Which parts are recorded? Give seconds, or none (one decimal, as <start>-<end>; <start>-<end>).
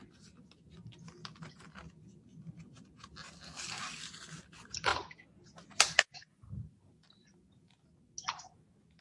0.0-9.0